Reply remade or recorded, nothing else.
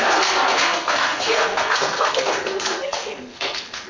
remade